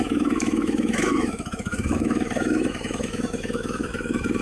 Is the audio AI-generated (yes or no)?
yes